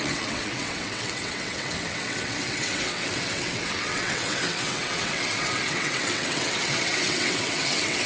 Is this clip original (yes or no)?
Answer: no